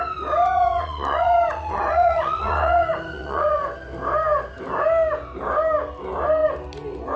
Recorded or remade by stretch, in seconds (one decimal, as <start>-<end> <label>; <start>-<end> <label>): 0.0-0.4 recorded; 0.4-3.6 remade; 3.6-7.2 recorded